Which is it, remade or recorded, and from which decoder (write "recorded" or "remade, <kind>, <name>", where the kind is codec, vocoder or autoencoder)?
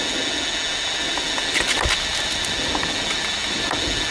recorded